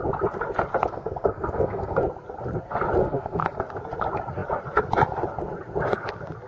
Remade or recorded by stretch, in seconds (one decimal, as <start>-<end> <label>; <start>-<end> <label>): 0.0-0.7 recorded; 0.7-2.0 remade; 2.0-3.0 recorded; 3.0-3.6 remade; 3.6-6.5 recorded

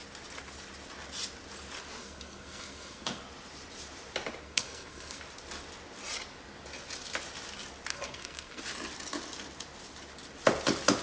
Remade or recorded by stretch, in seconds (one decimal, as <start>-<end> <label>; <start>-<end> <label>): 0.0-2.0 recorded; 2.0-3.2 remade; 3.2-4.4 recorded; 4.4-5.2 remade; 5.2-7.9 recorded; 7.9-8.6 remade; 8.6-11.0 recorded